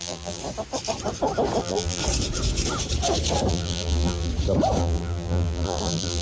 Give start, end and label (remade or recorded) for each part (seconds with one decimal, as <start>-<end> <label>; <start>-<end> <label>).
0.0-0.4 remade; 0.4-1.6 recorded; 1.6-2.0 remade; 2.0-3.5 recorded; 3.5-4.3 remade; 4.3-4.8 recorded; 4.8-6.2 remade